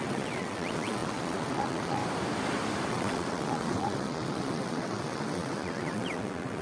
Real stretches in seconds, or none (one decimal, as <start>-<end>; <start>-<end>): 2.0-2.9